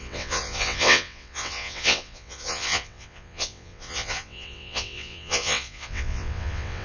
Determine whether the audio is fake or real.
fake